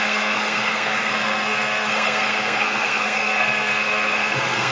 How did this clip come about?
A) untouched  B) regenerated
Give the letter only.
B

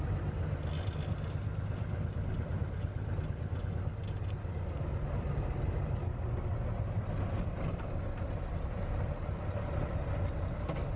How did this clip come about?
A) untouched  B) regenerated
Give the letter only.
A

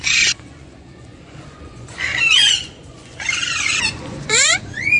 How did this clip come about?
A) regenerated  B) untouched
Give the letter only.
A